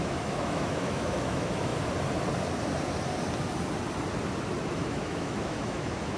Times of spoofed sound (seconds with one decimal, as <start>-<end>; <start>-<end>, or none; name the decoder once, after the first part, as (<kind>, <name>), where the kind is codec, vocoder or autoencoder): 0.0-1.7 (autoencoder, DAC-VAE); 4.7-6.2